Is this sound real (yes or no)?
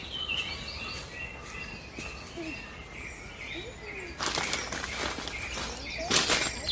yes